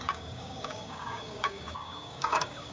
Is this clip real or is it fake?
fake